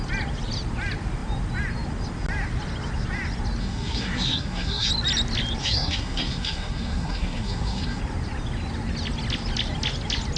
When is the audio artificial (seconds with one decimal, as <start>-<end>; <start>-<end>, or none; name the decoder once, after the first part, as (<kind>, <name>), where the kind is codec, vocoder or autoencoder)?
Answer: 3.6-4.9 (codec, SNAC); 5.6-8.0